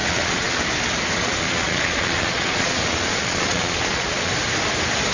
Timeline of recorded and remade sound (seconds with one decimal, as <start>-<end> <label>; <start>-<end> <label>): 0.0-0.6 remade; 0.6-1.2 recorded; 1.2-4.3 remade; 4.3-5.1 recorded

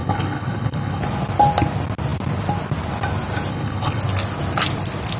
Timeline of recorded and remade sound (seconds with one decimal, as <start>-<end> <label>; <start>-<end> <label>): 0.0-1.0 remade; 1.0-3.5 recorded; 3.5-4.0 remade; 4.0-5.2 recorded